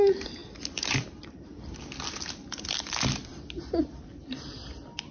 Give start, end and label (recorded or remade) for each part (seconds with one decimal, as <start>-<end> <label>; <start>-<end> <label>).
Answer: 0.0-0.4 recorded; 0.4-1.6 remade; 1.6-5.1 recorded